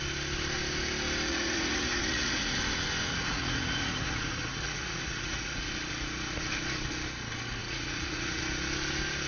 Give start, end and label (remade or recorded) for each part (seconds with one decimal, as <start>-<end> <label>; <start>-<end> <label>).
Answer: 0.0-1.3 recorded; 1.3-2.6 remade; 2.6-3.1 recorded; 3.1-5.7 remade; 5.7-7.6 recorded; 7.6-8.4 remade; 8.4-9.3 recorded